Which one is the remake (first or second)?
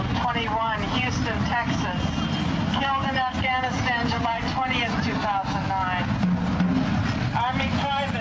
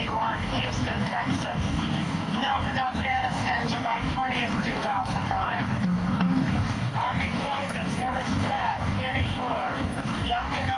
second